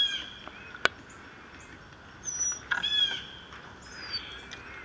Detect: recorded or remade recorded